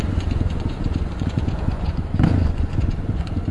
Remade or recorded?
remade